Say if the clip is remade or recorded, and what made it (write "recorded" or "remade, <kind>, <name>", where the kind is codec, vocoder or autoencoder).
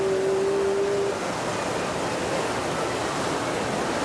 recorded